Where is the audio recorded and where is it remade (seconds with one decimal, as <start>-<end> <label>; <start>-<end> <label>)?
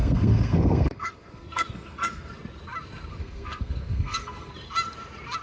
0.0-2.3 remade; 2.3-3.1 recorded; 3.1-4.5 remade; 4.5-5.4 recorded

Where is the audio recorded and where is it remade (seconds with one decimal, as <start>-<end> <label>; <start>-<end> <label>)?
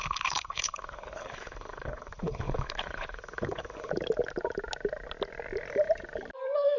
0.0-3.9 remade; 3.9-6.8 recorded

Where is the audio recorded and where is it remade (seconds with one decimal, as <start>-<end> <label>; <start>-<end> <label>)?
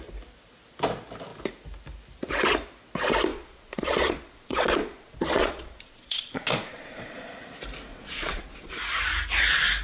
0.0-3.3 recorded; 3.3-7.3 remade; 7.3-7.9 recorded; 7.9-8.7 remade; 8.7-9.8 recorded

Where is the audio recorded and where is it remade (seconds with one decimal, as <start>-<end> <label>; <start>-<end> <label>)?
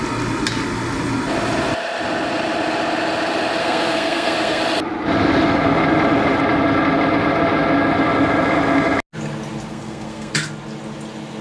0.0-3.6 recorded; 3.6-4.6 remade; 4.6-9.7 recorded; 9.7-10.3 remade; 10.3-11.4 recorded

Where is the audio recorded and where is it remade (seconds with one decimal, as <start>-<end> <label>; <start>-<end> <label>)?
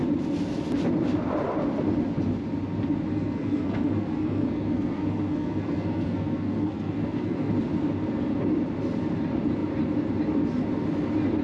0.0-3.1 recorded; 3.1-7.5 remade; 7.5-11.4 recorded